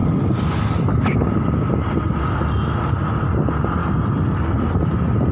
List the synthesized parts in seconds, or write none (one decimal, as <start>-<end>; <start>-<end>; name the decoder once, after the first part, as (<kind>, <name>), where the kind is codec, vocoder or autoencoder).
none